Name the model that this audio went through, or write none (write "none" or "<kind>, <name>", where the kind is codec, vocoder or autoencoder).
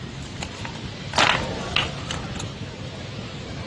none